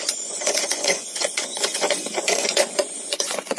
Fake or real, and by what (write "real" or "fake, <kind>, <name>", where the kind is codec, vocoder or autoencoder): fake, vocoder, Vocos